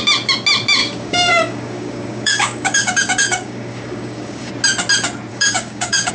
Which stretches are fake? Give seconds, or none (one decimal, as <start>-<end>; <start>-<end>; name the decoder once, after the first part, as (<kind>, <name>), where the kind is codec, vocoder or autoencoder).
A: 0.8-4.5 (codec, DAC); 5.3-6.1